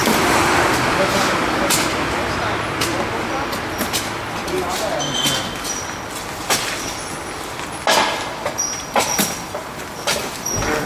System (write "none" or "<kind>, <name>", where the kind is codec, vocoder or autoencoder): none